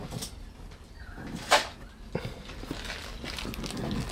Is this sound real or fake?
real